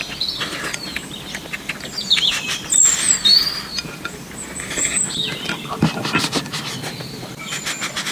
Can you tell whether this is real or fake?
fake